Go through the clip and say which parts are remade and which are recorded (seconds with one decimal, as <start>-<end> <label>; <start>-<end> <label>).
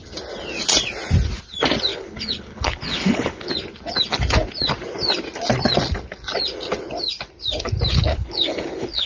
0.0-1.9 recorded; 1.9-3.5 remade; 3.5-8.1 recorded; 8.1-9.1 remade